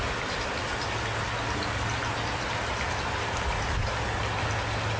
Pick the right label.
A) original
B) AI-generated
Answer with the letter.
A